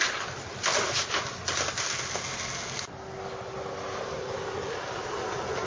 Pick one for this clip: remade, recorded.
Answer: recorded